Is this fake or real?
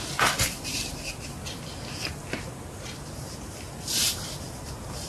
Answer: real